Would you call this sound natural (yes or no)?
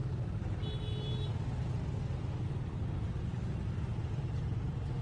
yes